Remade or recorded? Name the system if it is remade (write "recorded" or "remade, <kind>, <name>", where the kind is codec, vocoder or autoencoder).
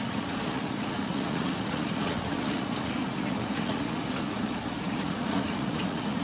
remade, vocoder, Vocos